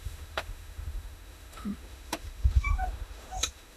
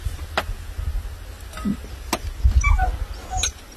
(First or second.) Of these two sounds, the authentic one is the second